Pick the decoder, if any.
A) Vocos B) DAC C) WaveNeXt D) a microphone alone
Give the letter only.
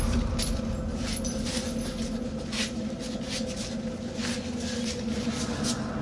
D